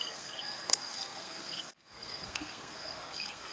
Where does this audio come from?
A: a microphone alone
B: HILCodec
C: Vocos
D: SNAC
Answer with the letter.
D